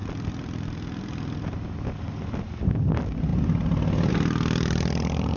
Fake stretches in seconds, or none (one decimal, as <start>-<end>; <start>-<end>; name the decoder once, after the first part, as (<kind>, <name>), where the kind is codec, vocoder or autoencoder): none